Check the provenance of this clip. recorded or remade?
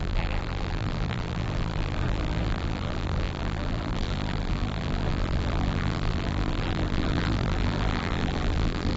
remade